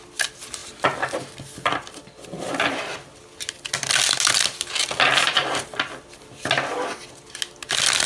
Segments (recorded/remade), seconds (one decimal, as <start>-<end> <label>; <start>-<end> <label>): 0.0-8.1 recorded